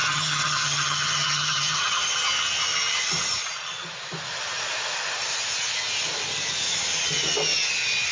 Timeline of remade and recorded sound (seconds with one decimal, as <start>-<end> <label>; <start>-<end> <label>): 0.0-2.1 remade; 2.1-8.1 recorded

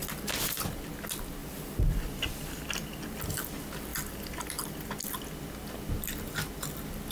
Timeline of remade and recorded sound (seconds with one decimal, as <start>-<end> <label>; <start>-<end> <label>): 0.0-1.4 recorded; 1.4-3.2 remade; 3.2-3.9 recorded; 3.9-4.9 remade; 4.9-7.1 recorded

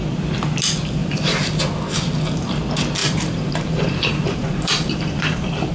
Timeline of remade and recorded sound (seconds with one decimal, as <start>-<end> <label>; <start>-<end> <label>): 0.0-1.0 recorded; 1.0-1.6 remade; 1.6-3.0 recorded; 3.0-5.7 remade

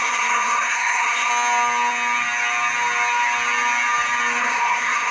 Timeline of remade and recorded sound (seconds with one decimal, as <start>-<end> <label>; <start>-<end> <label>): 0.0-1.3 remade; 1.3-4.4 recorded; 4.4-5.1 remade

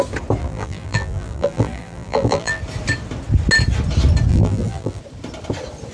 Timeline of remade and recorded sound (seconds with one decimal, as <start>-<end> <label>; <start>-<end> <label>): 0.0-0.4 recorded; 0.4-2.6 remade; 2.6-4.3 recorded; 4.3-5.0 remade; 5.0-5.9 recorded